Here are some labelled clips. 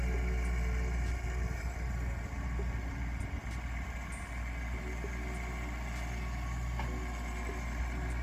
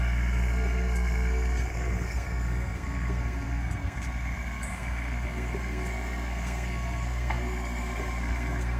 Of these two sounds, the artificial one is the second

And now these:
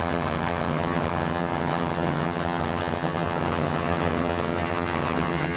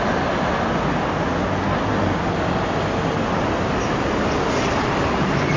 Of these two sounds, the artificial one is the first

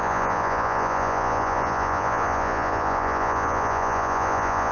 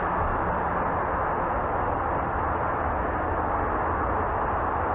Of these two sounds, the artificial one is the first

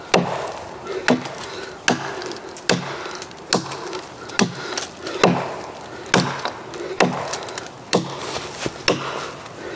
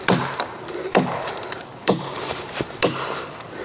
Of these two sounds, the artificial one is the second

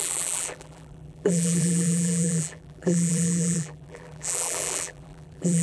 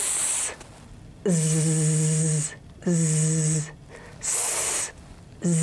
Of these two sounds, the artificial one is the first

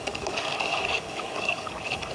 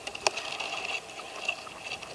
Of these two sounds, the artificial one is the first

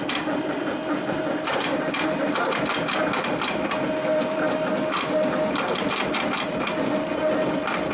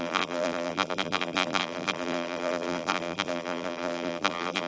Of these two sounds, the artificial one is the second